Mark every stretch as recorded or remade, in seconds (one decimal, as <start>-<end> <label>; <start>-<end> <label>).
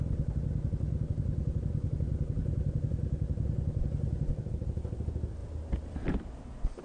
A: 0.0-6.8 recorded